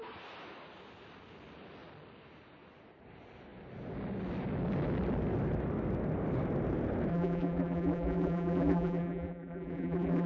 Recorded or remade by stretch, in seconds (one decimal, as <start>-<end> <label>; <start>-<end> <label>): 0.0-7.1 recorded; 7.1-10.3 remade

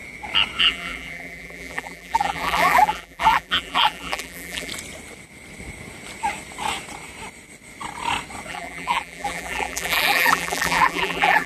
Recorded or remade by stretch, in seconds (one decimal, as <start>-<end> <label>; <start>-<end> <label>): 0.0-0.6 recorded; 0.6-4.7 remade; 4.7-8.5 recorded; 8.5-11.5 remade

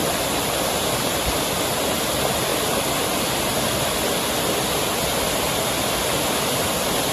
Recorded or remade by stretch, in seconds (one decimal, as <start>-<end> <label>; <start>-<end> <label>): 0.0-7.1 recorded

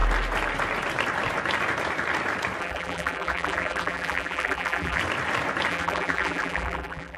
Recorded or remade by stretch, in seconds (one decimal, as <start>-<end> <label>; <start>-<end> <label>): 0.0-2.6 recorded; 2.6-5.0 remade; 5.0-5.7 recorded; 5.7-7.2 remade

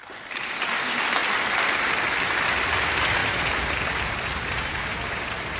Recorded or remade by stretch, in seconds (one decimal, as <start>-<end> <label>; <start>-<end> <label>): 0.0-1.2 recorded; 1.2-1.9 remade; 1.9-5.6 recorded

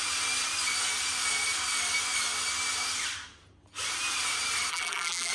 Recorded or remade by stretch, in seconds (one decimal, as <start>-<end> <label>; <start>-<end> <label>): 0.0-4.7 recorded; 4.7-5.3 remade

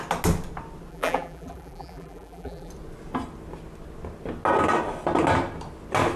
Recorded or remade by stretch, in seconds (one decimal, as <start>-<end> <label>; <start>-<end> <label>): 0.0-0.9 recorded; 0.9-2.7 remade; 2.7-6.2 recorded

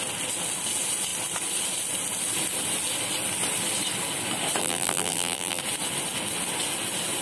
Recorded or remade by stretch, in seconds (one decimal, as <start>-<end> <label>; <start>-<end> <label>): 0.0-4.6 recorded; 4.6-5.6 remade; 5.6-7.2 recorded